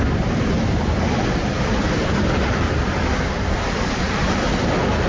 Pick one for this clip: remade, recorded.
remade